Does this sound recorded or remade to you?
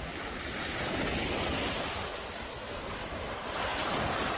recorded